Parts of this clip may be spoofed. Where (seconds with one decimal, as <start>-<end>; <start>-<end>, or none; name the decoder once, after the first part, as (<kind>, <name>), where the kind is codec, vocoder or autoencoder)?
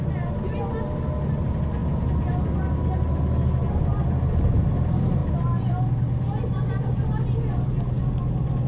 none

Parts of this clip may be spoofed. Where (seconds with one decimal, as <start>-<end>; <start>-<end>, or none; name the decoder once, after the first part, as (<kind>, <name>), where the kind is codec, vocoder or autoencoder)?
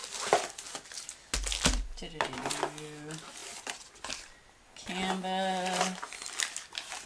none